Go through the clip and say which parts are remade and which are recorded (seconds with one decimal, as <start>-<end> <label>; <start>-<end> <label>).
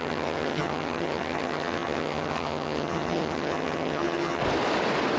0.0-4.4 remade; 4.4-5.2 recorded